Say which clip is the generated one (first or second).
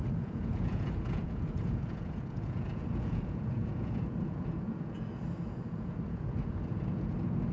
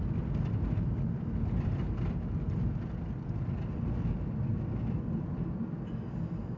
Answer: first